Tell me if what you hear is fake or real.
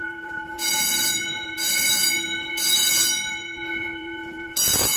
fake